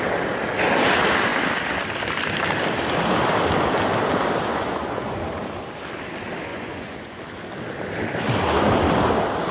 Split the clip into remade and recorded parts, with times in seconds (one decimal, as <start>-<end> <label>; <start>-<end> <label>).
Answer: 0.0-4.5 recorded; 4.5-5.2 remade; 5.2-6.5 recorded; 6.5-7.2 remade; 7.2-9.5 recorded